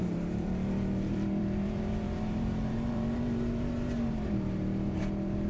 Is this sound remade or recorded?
remade